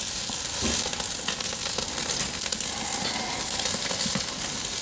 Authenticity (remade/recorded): recorded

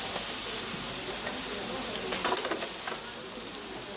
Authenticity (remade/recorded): recorded